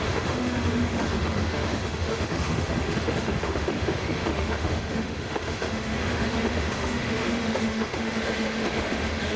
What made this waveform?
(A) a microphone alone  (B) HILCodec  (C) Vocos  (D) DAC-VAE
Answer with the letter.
D